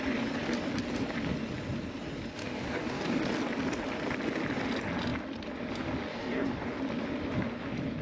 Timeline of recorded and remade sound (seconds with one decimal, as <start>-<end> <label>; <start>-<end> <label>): 0.0-2.4 recorded; 2.4-3.2 remade; 3.2-6.1 recorded; 6.1-6.8 remade; 6.8-8.0 recorded